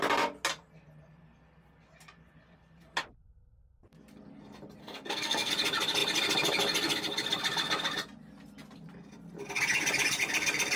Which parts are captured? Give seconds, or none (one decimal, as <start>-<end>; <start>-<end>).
0.0-4.8; 5.5-10.8